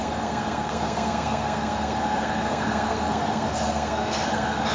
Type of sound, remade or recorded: remade